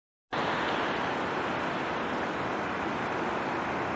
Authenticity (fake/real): real